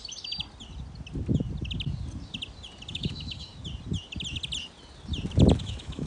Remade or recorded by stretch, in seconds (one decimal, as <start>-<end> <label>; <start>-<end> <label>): 0.0-2.9 recorded; 2.9-3.5 remade; 3.5-5.6 recorded; 5.6-6.1 remade